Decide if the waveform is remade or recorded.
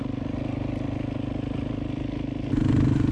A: recorded